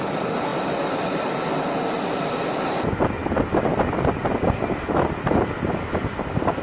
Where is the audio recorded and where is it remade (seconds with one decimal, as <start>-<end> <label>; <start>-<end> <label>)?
0.0-6.6 recorded